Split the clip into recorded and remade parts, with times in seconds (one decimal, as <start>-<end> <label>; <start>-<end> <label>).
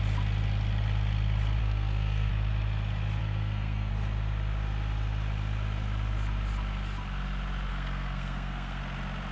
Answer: 0.0-1.6 recorded; 1.6-2.3 remade; 2.3-3.2 recorded; 3.2-3.9 remade; 3.9-7.7 recorded; 7.7-8.8 remade; 8.8-9.3 recorded